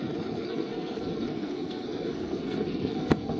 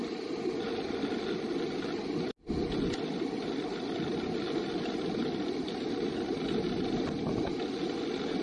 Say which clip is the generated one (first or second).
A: first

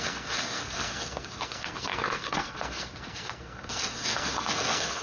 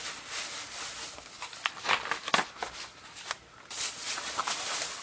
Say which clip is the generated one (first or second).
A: first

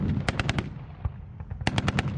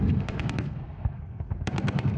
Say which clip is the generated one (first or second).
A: second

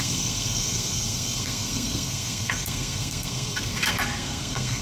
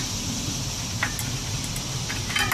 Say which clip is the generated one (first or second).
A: first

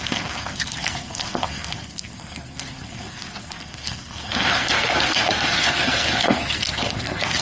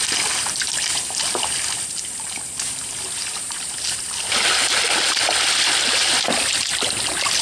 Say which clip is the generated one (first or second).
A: first